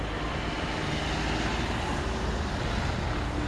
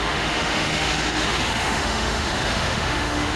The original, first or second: first